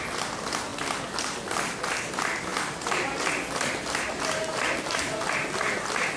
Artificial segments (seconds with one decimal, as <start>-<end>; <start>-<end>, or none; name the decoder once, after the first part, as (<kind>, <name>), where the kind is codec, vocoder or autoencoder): none